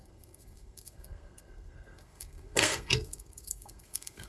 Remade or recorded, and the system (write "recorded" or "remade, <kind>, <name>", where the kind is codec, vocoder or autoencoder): remade, codec, SNAC